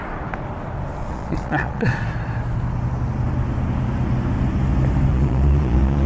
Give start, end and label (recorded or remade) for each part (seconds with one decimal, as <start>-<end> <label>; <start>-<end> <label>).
0.0-1.0 recorded; 1.0-1.9 remade; 1.9-5.1 recorded; 5.1-6.1 remade